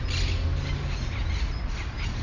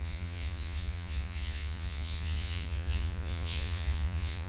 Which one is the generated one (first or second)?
second